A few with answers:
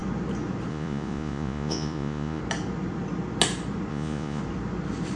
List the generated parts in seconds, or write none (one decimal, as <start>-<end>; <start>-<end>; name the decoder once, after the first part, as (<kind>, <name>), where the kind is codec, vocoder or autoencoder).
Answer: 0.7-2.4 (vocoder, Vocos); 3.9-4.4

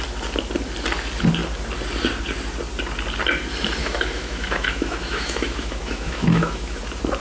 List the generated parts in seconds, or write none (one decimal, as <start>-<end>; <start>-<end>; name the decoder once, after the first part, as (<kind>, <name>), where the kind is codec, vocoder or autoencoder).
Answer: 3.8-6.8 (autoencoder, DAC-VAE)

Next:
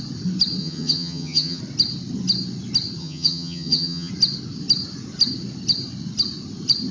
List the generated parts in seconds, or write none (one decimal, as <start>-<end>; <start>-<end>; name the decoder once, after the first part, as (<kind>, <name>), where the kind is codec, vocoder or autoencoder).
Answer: 0.6-1.6 (vocoder, HiFi-GAN); 3.0-4.1

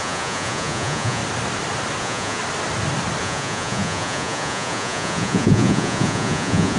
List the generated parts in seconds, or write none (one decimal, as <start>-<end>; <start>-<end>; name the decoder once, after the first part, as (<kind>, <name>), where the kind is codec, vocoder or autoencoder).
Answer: 0.0-1.2 (vocoder, Vocos); 2.0-2.4; 3.2-6.8

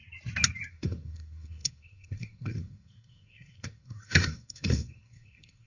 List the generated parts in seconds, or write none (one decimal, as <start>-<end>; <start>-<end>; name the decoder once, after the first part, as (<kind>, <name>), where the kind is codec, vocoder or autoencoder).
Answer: 0.7-5.7 (codec, SNAC)

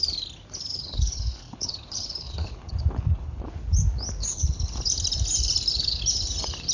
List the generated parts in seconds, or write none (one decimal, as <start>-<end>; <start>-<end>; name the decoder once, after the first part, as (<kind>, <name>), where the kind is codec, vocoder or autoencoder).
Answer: 0.7-3.5 (codec, HILCodec); 4.2-4.8